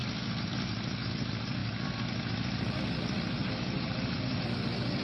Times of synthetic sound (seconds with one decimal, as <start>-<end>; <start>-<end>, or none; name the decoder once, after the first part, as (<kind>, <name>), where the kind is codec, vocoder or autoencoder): none